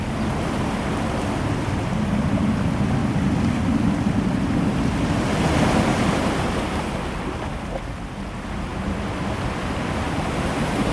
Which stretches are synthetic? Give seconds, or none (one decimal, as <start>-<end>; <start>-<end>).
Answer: 3.0-3.5; 5.9-6.6

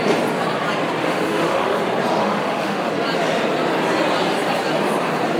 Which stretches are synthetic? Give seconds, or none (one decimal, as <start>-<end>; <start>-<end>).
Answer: 1.0-1.8; 2.2-2.9

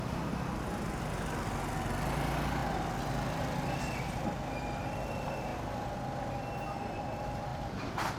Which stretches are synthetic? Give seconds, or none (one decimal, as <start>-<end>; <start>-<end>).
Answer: 7.5-8.2

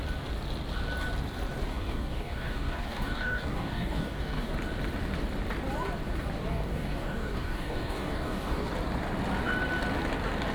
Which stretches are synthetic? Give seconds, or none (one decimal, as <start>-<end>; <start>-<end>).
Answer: 1.7-4.5; 6.5-8.7

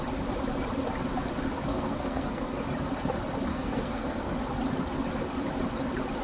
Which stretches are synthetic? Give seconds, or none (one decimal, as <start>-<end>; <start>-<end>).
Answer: 1.7-2.6; 3.5-4.3

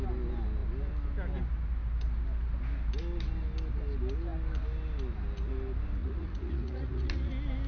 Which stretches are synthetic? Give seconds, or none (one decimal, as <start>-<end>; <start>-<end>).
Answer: 6.0-7.3

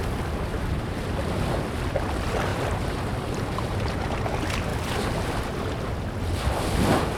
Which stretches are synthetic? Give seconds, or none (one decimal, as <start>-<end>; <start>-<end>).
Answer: 0.5-1.0; 2.5-4.0

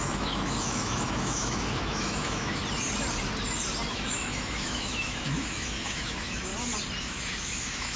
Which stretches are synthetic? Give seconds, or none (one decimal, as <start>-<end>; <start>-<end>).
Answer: 0.0-2.6; 3.9-6.5; 7.0-8.0